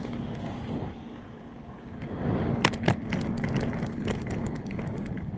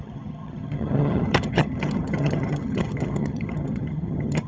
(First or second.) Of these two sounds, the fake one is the second